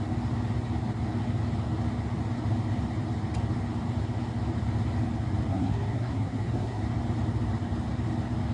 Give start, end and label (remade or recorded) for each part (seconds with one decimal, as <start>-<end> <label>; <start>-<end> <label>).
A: 0.0-5.5 recorded; 5.5-6.8 remade; 6.8-8.5 recorded